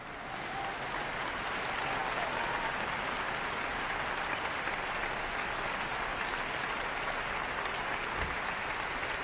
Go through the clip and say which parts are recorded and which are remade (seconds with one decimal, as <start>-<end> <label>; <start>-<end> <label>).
0.0-3.7 recorded; 3.7-5.2 remade; 5.2-9.2 recorded